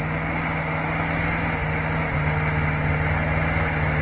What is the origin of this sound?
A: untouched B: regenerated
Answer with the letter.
A